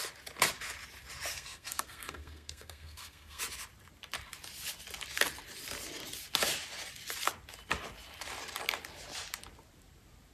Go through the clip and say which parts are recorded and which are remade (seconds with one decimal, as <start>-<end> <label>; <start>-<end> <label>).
0.0-1.3 recorded; 1.3-3.4 remade; 3.4-10.3 recorded